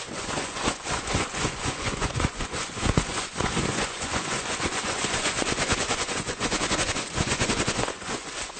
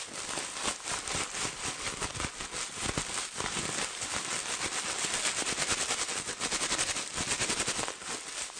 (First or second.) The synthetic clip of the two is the first